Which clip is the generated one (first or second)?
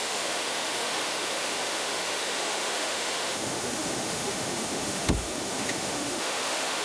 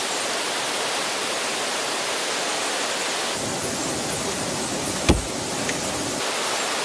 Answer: first